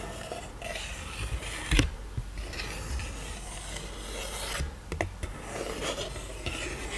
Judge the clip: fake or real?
real